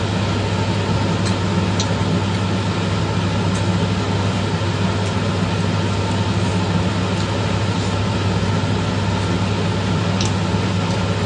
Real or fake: real